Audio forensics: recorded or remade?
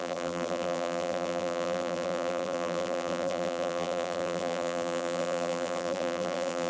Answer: remade